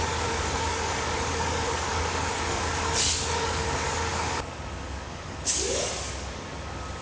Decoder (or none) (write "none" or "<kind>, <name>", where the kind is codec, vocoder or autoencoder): codec, DAC